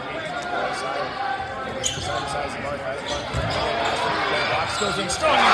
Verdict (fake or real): real